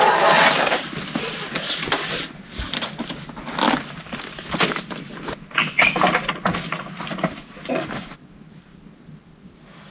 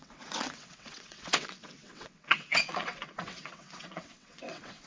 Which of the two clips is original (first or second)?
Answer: first